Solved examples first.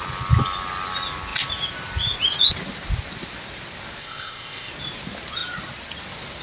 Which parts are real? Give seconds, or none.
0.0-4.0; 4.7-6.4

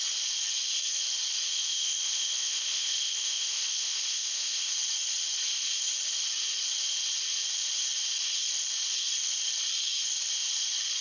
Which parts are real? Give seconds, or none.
0.0-1.5; 4.7-11.0

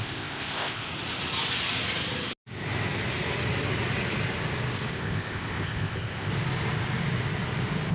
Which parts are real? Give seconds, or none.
0.9-4.9; 6.3-7.9

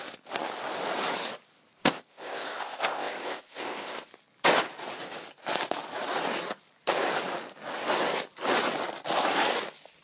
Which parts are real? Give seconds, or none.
0.0-2.1; 4.1-10.0

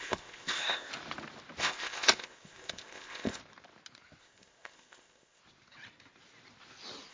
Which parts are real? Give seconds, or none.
0.9-1.6; 3.4-4.2; 5.4-7.1

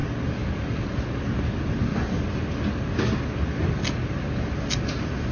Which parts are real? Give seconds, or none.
0.0-5.3